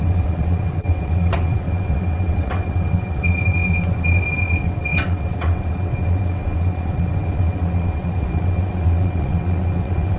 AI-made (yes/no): yes